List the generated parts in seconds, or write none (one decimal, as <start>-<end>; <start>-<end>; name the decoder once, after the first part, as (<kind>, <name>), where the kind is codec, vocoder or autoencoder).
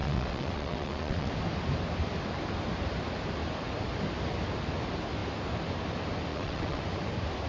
0.0-1.3 (vocoder, WaveNeXt); 6.3-6.8